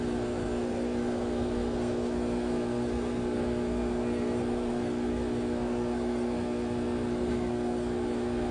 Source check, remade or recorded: remade